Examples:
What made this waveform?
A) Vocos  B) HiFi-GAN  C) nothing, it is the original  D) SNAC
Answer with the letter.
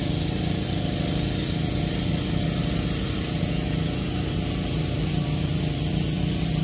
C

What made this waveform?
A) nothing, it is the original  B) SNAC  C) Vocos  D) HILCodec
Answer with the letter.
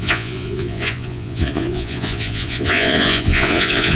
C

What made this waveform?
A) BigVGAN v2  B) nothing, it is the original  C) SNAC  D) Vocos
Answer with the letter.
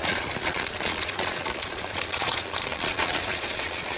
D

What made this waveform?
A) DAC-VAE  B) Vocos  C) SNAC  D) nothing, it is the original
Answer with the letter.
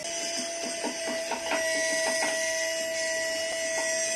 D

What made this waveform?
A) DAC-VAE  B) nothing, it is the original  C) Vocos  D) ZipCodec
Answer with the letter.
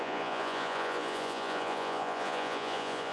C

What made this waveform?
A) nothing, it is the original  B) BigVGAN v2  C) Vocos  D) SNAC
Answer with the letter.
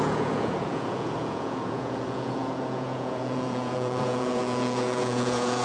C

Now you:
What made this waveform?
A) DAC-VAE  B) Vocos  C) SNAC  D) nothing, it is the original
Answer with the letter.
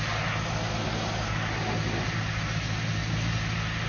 D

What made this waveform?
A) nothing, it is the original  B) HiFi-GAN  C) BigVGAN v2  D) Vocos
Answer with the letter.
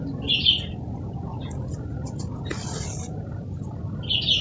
A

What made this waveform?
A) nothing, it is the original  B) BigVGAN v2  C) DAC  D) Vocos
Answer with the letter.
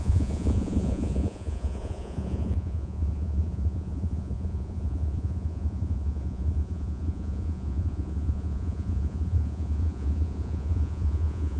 D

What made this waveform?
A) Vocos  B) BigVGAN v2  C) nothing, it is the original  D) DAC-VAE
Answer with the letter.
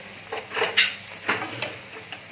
C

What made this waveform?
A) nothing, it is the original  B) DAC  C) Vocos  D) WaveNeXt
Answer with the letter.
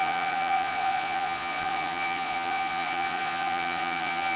C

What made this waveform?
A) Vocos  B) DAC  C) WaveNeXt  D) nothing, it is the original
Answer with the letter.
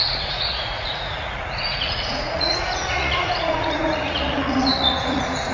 A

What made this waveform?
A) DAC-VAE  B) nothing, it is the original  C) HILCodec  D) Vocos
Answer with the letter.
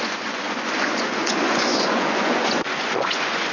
D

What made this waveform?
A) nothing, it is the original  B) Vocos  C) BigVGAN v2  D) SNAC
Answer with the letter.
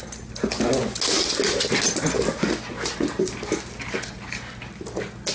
A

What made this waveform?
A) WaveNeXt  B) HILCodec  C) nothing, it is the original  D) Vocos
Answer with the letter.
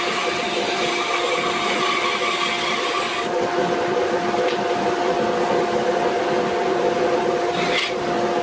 C